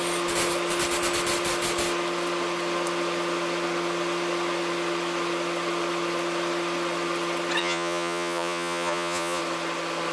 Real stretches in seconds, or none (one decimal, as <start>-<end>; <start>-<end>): 0.0-7.6; 9.4-10.1